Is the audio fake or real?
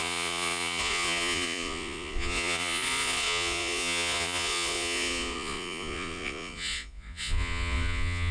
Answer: fake